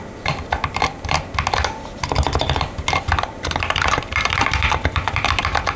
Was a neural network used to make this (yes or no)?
no